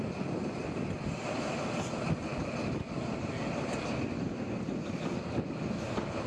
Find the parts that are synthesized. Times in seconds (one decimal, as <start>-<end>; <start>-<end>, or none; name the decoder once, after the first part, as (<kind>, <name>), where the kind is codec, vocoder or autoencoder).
none